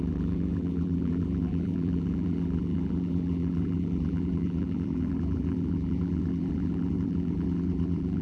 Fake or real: fake